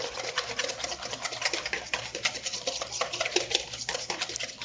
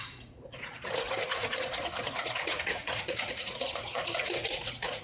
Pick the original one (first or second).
first